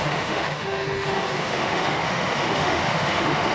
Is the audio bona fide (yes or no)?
no